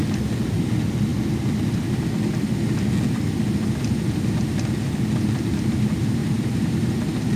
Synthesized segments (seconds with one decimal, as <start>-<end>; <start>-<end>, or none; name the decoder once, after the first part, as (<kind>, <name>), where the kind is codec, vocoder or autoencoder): 6.2-7.4 (vocoder, BigVGAN v2)